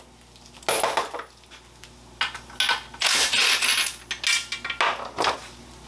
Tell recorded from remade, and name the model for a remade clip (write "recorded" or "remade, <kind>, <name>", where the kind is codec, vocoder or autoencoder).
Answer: recorded